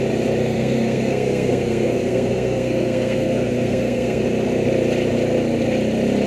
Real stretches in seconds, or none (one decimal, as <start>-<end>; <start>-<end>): 0.0-0.4; 4.2-6.3